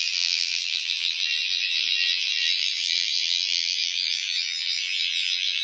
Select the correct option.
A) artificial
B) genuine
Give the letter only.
A